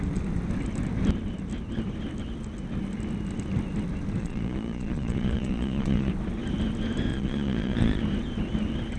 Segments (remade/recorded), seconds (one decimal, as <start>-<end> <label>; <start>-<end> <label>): 0.0-4.2 recorded; 4.2-6.1 remade; 6.1-7.1 recorded; 7.1-8.0 remade; 8.0-9.0 recorded